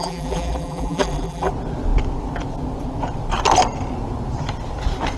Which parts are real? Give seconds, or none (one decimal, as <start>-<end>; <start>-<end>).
1.5-5.2